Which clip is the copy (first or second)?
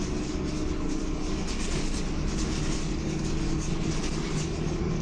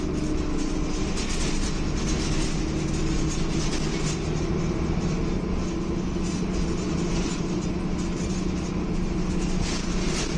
first